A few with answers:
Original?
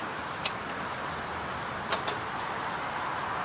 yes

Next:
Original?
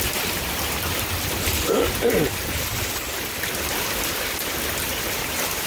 yes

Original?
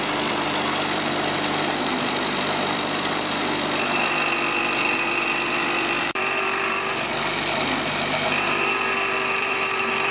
no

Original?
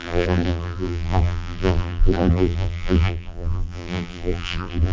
no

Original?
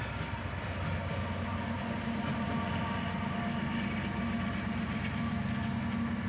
yes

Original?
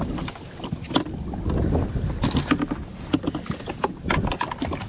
yes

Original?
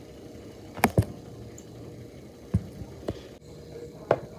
yes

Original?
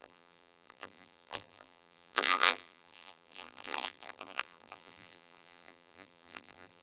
no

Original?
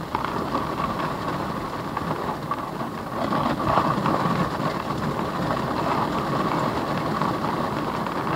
yes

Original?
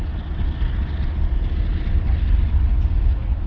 yes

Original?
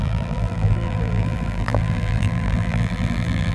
no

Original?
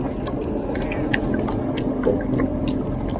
yes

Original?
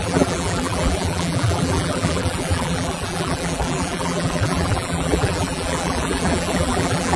no